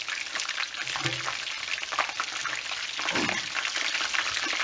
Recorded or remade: recorded